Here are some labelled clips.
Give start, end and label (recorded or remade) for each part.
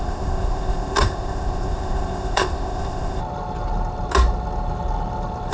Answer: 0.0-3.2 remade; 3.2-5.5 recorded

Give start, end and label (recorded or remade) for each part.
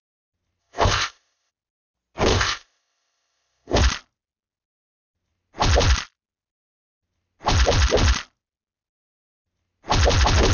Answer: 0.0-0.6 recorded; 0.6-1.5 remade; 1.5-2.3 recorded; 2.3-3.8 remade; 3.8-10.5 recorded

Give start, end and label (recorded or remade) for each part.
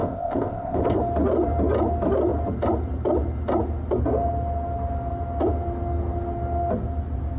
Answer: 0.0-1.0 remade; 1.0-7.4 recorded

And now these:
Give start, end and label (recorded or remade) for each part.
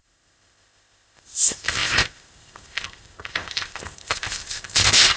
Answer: 0.0-5.2 remade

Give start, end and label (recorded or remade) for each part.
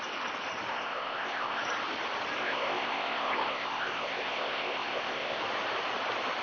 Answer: 0.0-0.7 recorded; 0.7-1.6 remade; 1.6-2.4 recorded; 2.4-5.4 remade; 5.4-6.4 recorded